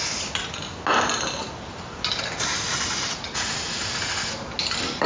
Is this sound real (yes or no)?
yes